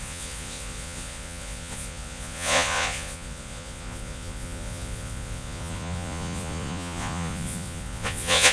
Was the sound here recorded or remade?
remade